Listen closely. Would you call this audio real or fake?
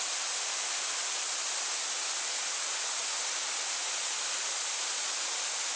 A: real